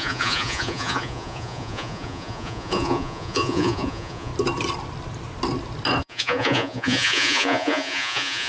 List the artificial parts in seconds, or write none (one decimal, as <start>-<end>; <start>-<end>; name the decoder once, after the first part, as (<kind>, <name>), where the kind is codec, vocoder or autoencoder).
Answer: 0.0-4.3 (vocoder, Vocos); 6.0-8.5